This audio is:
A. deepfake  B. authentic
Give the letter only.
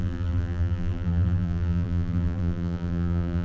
A